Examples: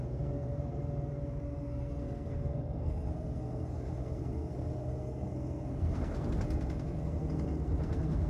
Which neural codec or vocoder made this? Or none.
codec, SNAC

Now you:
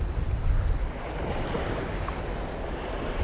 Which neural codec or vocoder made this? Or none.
none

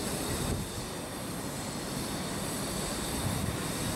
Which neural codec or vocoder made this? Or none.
none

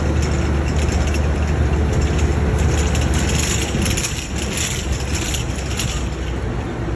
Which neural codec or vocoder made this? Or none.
none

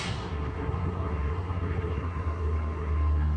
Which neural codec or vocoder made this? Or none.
codec, SNAC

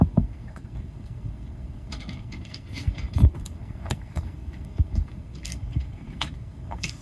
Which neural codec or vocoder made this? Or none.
codec, SNAC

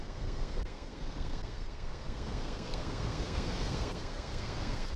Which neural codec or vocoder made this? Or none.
codec, SNAC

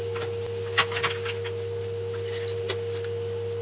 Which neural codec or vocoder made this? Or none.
none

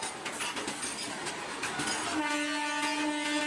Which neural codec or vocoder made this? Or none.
none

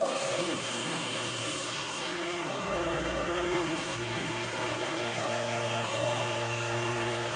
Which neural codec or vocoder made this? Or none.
codec, SNAC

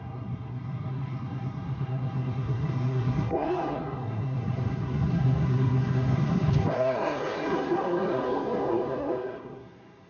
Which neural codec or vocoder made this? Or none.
codec, SNAC